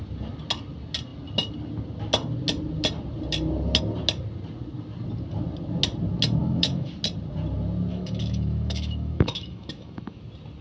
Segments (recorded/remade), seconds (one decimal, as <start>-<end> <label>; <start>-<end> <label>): 0.0-6.4 recorded; 6.4-6.9 remade; 6.9-7.9 recorded; 7.9-10.2 remade; 10.2-10.6 recorded